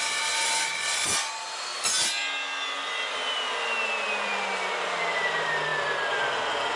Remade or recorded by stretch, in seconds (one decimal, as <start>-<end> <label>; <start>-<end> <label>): 0.0-6.8 recorded